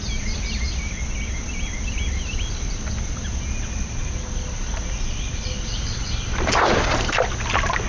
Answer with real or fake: real